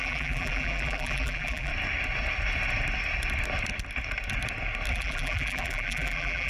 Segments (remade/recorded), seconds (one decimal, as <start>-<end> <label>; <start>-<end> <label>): 0.0-1.7 remade; 1.7-4.9 recorded; 4.9-6.5 remade

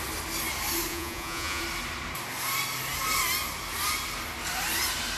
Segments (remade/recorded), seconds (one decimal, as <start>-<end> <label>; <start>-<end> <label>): 0.0-0.9 recorded; 0.9-1.6 remade; 1.6-5.2 recorded

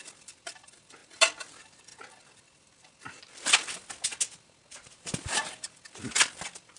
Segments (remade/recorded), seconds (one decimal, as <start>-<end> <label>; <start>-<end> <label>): 0.0-1.9 remade; 1.9-3.2 recorded; 3.2-4.1 remade; 4.1-4.7 recorded; 4.7-6.8 remade

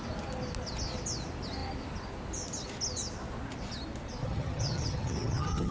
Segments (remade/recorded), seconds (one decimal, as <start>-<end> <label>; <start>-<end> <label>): 0.0-4.2 recorded; 4.2-5.7 remade

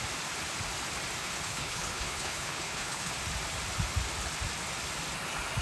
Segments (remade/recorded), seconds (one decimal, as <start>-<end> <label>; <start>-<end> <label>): 0.0-1.2 recorded; 1.2-3.1 remade; 3.1-5.6 recorded